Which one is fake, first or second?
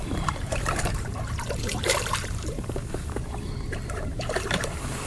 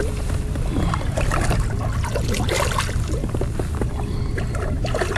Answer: first